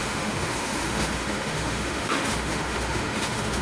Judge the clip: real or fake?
fake